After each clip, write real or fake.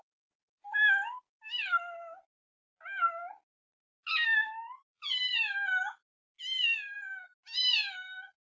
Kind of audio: real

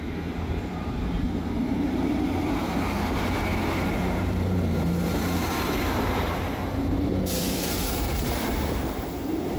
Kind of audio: fake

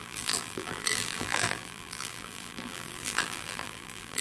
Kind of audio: fake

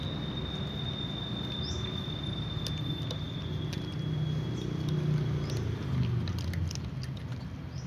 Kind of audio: real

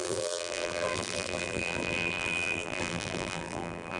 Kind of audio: fake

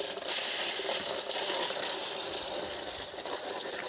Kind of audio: fake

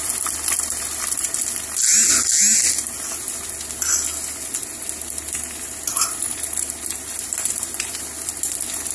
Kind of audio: real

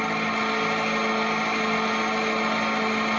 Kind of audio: real